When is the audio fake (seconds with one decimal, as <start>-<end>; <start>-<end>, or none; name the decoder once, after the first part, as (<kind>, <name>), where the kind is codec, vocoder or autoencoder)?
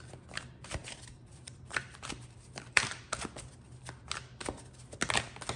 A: 0.8-3.0 (vocoder, BigVGAN v2)